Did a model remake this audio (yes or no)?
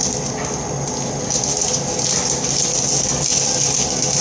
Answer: no